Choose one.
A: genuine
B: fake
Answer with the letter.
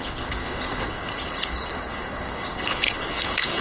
B